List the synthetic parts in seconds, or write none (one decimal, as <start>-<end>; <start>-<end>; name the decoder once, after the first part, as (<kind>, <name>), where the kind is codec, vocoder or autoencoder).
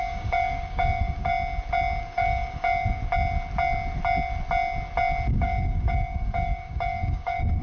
0.0-1.3 (codec, DAC); 2.0-3.0; 5.3-7.6